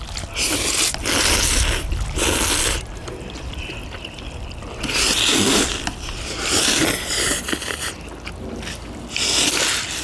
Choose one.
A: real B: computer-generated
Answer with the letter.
A